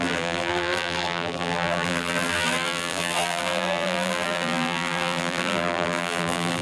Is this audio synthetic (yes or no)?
yes